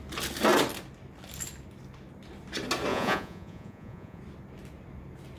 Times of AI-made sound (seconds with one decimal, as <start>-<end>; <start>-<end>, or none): 2.9-4.2